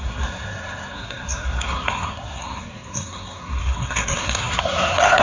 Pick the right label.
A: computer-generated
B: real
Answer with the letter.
A